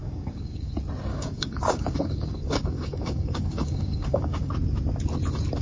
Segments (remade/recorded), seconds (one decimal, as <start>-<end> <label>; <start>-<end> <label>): 0.0-0.7 remade; 0.7-1.1 recorded; 1.1-4.5 remade; 4.5-5.6 recorded